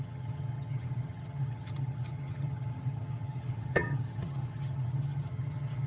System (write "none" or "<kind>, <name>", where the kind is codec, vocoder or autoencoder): vocoder, HiFi-GAN